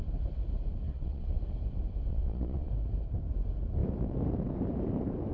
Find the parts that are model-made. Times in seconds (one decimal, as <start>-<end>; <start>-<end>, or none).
0.9-1.4; 2.1-2.7